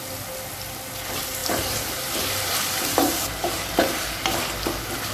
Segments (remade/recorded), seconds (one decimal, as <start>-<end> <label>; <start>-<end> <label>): 0.0-1.4 recorded; 1.4-4.2 remade; 4.2-5.1 recorded